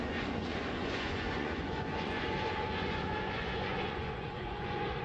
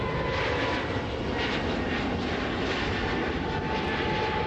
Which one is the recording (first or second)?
second